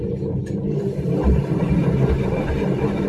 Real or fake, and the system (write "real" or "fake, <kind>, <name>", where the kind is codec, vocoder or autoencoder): fake, vocoder, BigVGAN v2